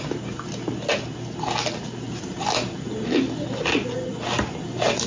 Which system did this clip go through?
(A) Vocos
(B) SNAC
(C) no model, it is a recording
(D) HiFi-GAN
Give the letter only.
C